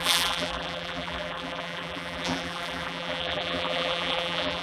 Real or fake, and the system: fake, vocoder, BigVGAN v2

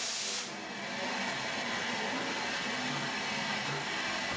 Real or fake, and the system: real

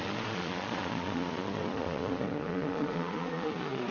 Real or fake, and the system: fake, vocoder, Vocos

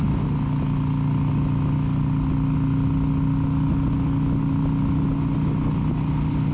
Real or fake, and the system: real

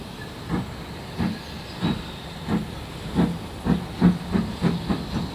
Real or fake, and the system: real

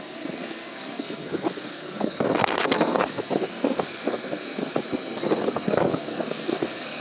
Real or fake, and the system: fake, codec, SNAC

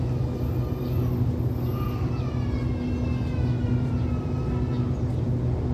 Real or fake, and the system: real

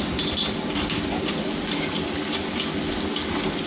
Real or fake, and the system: real